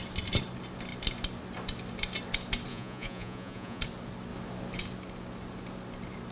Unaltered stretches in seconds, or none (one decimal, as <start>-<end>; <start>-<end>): 0.0-2.7; 3.8-6.3